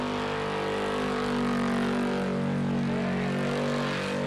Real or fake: real